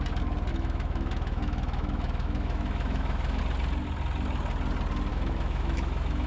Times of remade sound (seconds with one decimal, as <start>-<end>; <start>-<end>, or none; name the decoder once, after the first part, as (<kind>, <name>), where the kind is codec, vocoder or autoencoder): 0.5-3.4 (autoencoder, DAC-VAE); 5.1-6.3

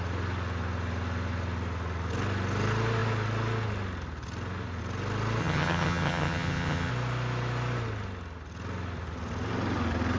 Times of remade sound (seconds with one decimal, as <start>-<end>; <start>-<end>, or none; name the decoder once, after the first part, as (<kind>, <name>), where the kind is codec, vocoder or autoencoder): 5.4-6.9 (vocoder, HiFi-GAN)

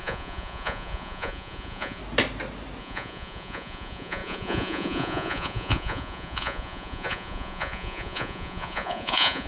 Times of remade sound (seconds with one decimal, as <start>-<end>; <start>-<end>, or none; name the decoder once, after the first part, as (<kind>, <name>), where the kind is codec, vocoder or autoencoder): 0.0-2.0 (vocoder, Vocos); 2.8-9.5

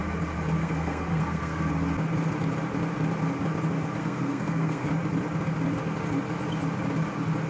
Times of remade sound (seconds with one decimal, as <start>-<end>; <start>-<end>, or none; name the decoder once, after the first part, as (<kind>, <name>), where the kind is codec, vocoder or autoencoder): 0.6-1.7 (codec, SNAC); 4.0-4.9

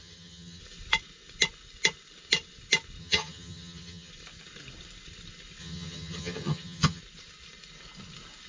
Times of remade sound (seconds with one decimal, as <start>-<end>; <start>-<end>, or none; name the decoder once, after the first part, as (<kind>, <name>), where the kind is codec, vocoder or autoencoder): 0.0-0.6 (vocoder, HiFi-GAN); 3.0-4.1; 5.6-7.0